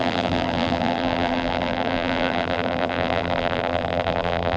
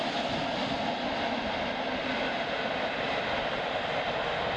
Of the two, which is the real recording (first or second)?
second